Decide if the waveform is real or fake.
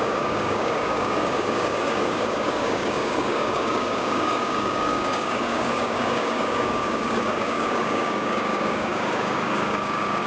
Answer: fake